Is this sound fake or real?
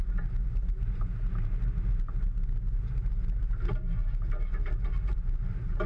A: real